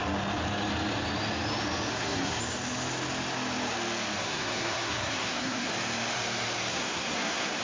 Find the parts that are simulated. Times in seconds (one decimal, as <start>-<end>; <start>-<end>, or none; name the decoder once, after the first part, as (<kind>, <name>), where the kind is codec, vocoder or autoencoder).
1.9-2.4 (codec, SNAC); 4.2-5.7; 6.7-7.6